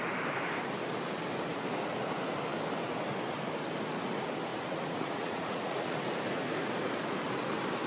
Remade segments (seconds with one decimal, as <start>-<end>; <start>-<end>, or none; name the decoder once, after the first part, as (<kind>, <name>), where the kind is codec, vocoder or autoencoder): 4.5-6.0 (vocoder, Vocos)

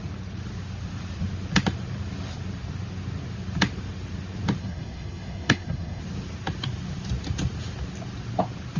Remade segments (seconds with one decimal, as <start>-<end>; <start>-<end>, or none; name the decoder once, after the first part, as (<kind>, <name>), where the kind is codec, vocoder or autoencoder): 4.6-6.0 (codec, SNAC)

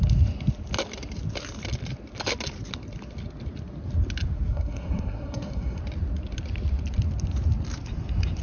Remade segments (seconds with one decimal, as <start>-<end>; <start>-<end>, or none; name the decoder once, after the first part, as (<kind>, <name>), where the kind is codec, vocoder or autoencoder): 4.5-5.8 (codec, SNAC)

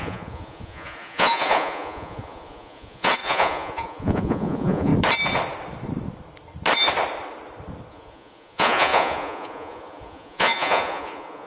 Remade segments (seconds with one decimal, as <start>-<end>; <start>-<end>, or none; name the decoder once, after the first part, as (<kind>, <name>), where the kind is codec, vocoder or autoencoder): 0.0-4.9 (vocoder, Vocos); 7.9-11.5

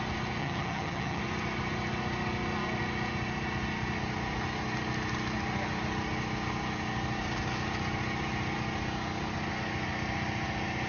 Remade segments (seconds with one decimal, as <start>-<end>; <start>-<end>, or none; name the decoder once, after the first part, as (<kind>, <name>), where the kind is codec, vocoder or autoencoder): 0.4-1.2 (vocoder, HiFi-GAN)